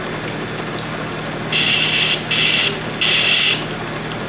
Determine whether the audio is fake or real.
real